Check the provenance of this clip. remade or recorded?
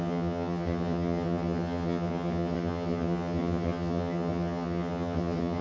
remade